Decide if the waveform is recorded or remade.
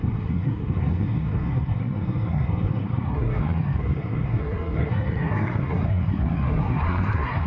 remade